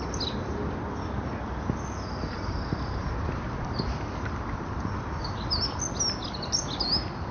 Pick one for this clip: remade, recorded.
recorded